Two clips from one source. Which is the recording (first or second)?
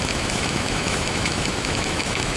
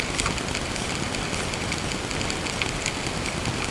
second